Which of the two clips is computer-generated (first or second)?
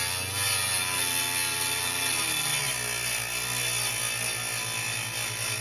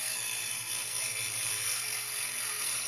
second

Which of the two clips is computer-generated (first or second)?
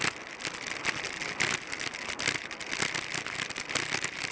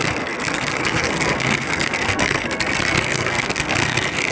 second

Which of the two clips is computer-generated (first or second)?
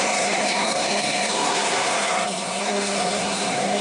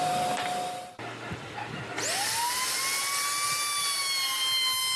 first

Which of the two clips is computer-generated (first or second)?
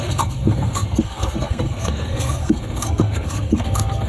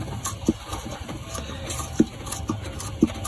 first